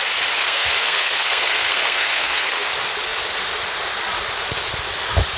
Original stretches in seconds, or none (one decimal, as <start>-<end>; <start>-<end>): 0.0-0.4; 2.7-5.4

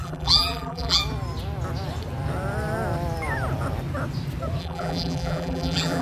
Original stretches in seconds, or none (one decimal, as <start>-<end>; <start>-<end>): 1.0-4.6

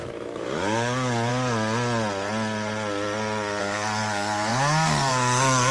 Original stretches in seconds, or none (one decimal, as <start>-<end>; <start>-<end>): 1.3-3.6

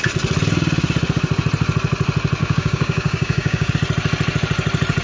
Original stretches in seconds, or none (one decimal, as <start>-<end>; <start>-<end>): 0.0-2.4; 3.7-5.0

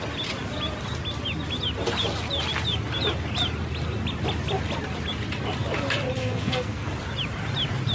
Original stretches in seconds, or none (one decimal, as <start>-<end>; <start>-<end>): 0.0-6.2; 6.9-7.9